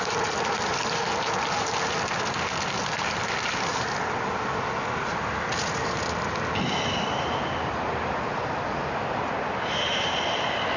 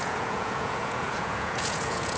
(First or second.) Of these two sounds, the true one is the first